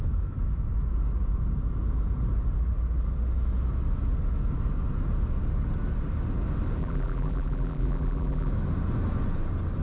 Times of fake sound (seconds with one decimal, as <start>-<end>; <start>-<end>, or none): 6.8-8.5